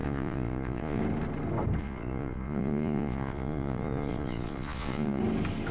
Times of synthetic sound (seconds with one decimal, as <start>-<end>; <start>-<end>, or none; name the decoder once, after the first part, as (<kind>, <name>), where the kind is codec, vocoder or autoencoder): 0.0-1.0 (vocoder, Vocos); 1.8-5.2